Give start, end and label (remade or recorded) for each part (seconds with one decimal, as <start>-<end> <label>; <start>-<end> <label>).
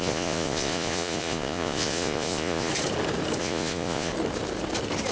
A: 0.0-2.7 remade; 2.7-3.4 recorded; 3.4-4.1 remade; 4.1-5.1 recorded